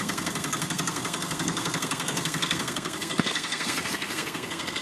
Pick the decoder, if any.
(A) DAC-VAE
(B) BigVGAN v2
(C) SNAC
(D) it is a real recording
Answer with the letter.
C